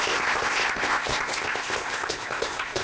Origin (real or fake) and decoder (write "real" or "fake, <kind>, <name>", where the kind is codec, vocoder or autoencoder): fake, codec, ZipCodec